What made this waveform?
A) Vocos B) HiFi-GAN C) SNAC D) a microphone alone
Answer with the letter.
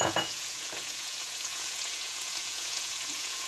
A